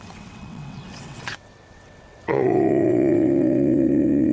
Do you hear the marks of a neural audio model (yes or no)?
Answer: yes